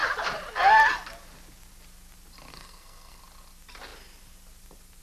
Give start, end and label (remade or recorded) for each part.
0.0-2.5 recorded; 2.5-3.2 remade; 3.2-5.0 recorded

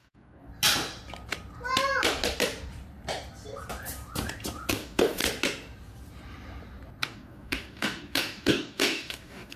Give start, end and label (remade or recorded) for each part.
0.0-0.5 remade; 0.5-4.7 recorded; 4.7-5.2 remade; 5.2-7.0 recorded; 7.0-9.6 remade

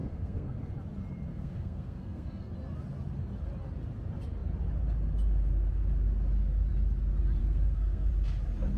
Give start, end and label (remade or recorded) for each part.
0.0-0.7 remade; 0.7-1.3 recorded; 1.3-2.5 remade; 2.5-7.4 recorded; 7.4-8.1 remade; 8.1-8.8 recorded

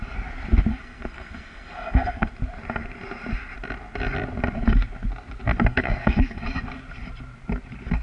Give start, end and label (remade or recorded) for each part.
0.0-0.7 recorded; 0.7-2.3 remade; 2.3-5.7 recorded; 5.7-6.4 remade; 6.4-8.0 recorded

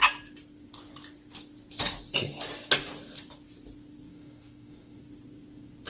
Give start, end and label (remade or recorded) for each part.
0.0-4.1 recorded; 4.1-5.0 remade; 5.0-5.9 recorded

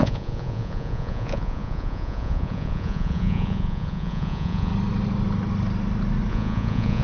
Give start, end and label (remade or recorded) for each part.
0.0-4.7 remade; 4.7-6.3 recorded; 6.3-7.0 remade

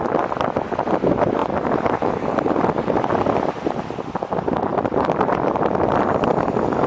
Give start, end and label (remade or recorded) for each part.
0.0-1.4 recorded; 1.4-3.8 remade; 3.8-4.7 recorded; 4.7-6.0 remade; 6.0-6.9 recorded